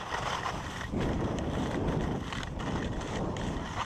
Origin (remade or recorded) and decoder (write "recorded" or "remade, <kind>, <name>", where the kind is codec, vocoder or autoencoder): remade, vocoder, BigVGAN v2